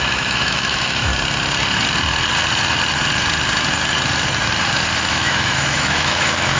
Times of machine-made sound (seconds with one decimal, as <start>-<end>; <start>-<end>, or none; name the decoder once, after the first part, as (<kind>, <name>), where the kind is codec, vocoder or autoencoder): 0.0-1.1 (autoencoder, DAC-VAE); 5.1-6.6